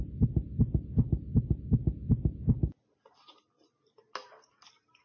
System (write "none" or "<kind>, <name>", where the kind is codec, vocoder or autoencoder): none